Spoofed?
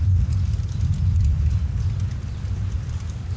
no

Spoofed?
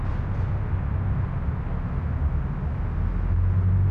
no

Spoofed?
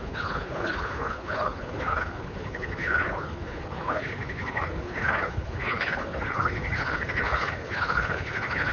yes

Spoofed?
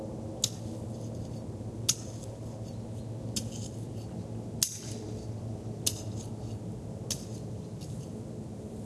no